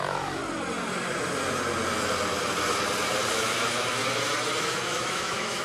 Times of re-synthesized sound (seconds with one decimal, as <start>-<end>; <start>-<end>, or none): 0.0-0.4; 3.3-4.0; 4.6-5.6